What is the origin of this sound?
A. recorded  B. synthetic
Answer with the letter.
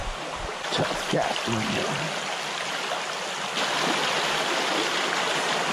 A